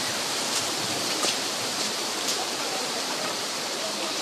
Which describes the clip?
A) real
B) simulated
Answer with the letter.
B